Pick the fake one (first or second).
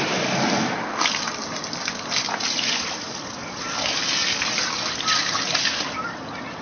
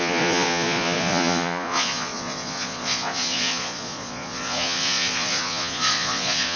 second